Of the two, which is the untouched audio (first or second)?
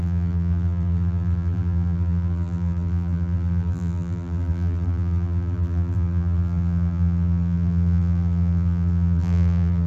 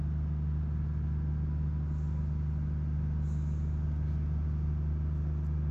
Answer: second